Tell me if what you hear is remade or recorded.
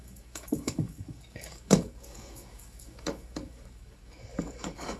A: remade